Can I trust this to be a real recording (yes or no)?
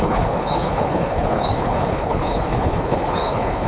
no